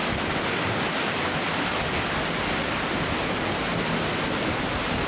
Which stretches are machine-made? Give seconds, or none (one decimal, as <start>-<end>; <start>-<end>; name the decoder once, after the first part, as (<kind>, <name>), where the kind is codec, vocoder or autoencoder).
none